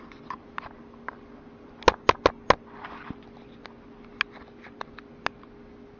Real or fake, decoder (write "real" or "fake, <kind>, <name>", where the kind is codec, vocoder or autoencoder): real